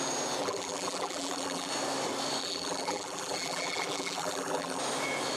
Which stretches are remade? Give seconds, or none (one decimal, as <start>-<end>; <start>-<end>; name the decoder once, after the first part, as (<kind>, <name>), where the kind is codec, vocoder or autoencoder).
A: 0.4-1.7 (vocoder, BigVGAN v2); 2.4-4.8